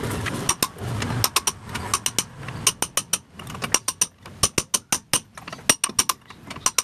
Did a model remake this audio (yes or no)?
no